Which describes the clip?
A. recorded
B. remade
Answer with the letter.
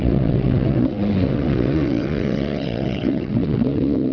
B